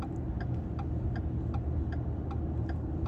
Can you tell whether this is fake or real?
real